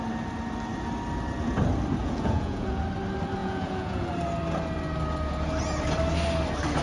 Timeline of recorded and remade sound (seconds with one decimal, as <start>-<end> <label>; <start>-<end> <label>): 0.0-2.0 recorded; 2.0-2.8 remade; 2.8-3.4 recorded; 3.4-4.1 remade; 4.1-6.8 recorded

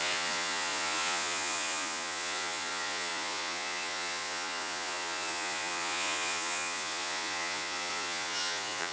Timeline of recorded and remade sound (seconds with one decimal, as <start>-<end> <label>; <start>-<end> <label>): 0.0-8.9 remade

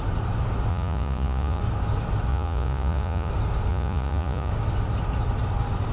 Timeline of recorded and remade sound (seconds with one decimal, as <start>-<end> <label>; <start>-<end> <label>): 0.0-0.7 recorded; 0.7-1.6 remade; 1.6-2.3 recorded; 2.3-3.3 remade; 3.3-3.7 recorded; 3.7-4.5 remade; 4.5-5.9 recorded

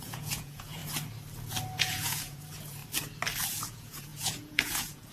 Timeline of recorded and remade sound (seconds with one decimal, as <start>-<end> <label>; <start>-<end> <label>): 0.0-0.8 remade; 0.8-1.8 recorded; 1.8-2.8 remade; 2.8-3.5 recorded; 3.5-5.1 remade

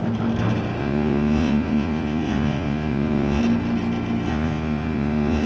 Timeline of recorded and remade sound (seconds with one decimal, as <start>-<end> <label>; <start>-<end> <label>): 0.0-0.8 recorded; 0.8-3.4 remade; 3.4-4.3 recorded; 4.3-5.5 remade